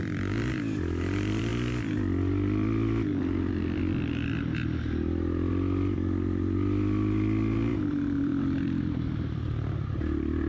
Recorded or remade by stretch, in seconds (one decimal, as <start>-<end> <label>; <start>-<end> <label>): 0.0-1.5 remade; 1.5-5.5 recorded; 5.5-10.5 remade